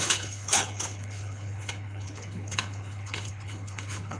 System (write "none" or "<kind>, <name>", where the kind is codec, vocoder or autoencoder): codec, HILCodec